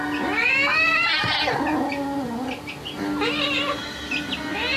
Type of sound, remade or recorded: recorded